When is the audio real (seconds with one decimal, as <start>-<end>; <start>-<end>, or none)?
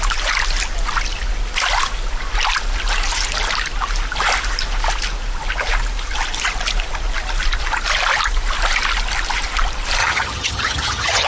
0.0-10.0